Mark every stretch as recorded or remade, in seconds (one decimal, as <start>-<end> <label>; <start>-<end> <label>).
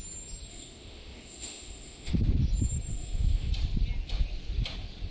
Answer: 0.0-0.5 recorded; 0.5-2.1 remade; 2.1-2.9 recorded; 2.9-3.5 remade; 3.5-5.1 recorded